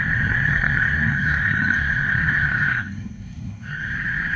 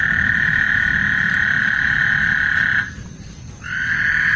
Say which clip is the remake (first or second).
first